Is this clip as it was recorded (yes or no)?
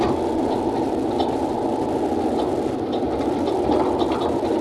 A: yes